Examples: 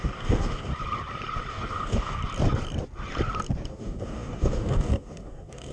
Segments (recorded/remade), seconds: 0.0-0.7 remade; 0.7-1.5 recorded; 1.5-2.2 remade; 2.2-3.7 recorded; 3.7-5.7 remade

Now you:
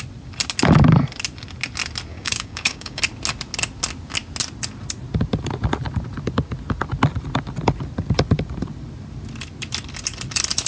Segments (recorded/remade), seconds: 0.0-2.1 recorded; 2.1-3.0 remade; 3.0-10.7 recorded

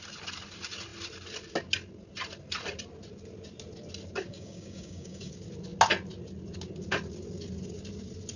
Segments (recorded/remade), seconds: 0.0-4.3 recorded; 4.3-5.3 remade; 5.3-8.4 recorded

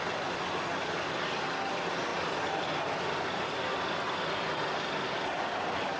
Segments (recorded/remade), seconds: 0.0-6.0 recorded

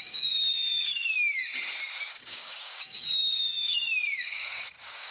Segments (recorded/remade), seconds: 0.0-1.4 remade; 1.4-2.1 recorded; 2.1-5.1 remade